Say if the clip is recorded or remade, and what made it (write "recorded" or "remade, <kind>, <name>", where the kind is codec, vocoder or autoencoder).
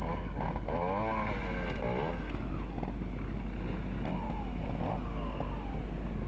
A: recorded